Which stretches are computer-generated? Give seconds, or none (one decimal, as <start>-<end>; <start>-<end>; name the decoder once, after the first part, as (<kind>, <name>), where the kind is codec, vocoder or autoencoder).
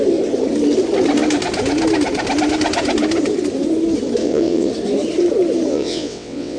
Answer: 4.2-4.7 (vocoder, WaveNeXt); 5.7-6.6